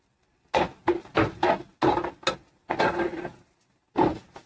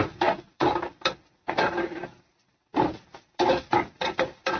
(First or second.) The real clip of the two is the first